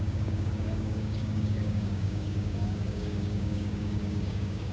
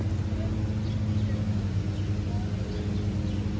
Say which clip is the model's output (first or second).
first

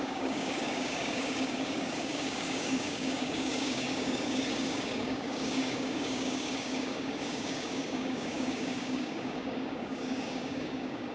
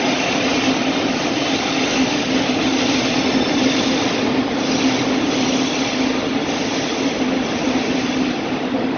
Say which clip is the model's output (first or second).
first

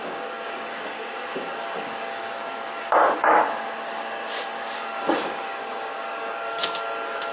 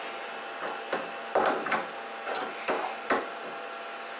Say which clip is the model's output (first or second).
first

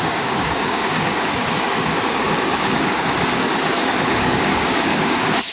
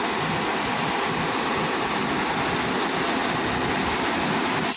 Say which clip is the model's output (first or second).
first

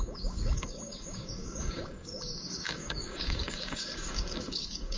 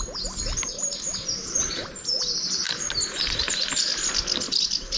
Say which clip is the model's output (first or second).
first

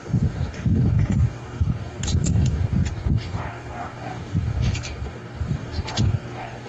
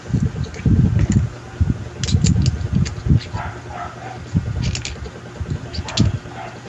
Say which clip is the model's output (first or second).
first